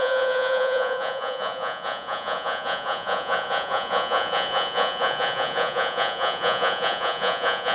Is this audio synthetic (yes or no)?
yes